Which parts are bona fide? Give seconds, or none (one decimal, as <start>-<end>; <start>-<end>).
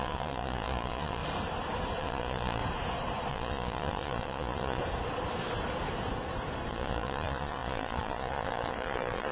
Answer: 1.2-2.0; 2.6-3.3; 4.8-6.7